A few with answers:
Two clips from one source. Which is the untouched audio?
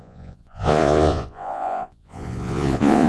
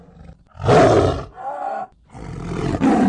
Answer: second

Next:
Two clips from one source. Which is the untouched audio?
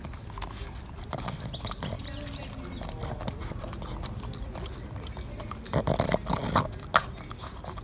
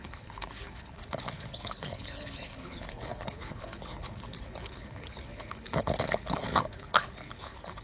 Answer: first